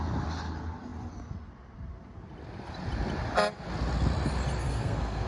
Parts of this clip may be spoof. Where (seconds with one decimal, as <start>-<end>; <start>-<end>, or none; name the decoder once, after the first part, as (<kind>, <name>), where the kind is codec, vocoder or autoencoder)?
4.6-5.3 (codec, SNAC)